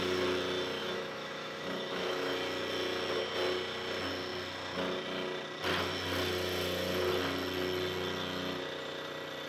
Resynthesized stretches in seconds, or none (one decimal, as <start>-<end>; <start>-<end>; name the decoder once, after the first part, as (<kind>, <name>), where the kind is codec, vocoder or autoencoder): 0.8-2.3 (autoencoder, DAC-VAE)

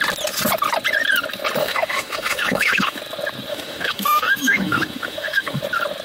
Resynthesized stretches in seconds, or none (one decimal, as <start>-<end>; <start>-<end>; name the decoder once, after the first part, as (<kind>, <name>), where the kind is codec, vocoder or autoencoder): 1.6-3.0 (autoencoder, DAC-VAE); 3.5-5.6

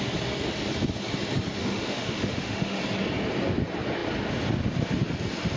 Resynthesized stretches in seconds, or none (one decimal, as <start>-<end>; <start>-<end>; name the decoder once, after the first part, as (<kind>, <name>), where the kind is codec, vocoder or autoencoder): 1.6-2.8 (autoencoder, DAC-VAE)

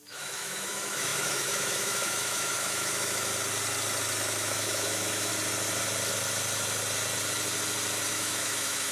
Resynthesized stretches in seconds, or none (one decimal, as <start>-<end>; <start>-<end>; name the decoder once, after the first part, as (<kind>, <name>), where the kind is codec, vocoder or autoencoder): 0.0-3.3 (autoencoder, DAC-VAE); 4.2-5.3; 8.1-8.9

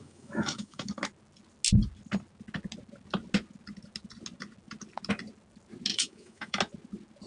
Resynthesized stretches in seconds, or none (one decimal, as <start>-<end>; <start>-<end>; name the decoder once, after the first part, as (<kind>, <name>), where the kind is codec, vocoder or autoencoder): 0.0-0.9 (autoencoder, DAC-VAE); 5.9-6.6